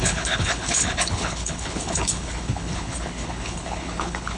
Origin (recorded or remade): remade